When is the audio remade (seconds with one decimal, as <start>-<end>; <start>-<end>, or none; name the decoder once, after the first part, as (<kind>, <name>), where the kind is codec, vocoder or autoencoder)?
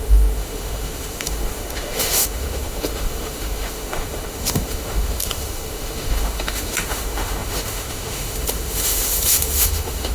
0.0-10.1 (autoencoder, DAC-VAE)